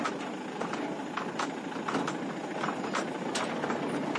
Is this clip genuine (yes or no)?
yes